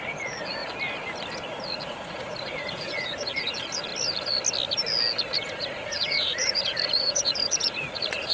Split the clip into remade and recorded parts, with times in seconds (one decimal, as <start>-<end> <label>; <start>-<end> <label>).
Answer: 0.0-0.6 remade; 0.6-1.9 recorded; 1.9-3.9 remade; 3.9-5.7 recorded; 5.7-8.3 remade